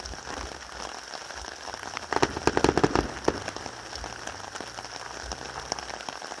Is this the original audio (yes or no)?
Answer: yes